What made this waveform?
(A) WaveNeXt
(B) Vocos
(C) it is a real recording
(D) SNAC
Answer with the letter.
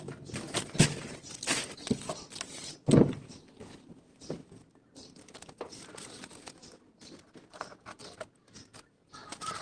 C